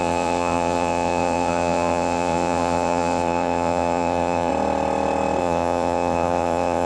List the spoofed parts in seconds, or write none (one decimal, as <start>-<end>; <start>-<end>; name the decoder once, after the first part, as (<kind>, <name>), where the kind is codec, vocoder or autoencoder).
0.0-4.5 (vocoder, Vocos); 5.4-6.9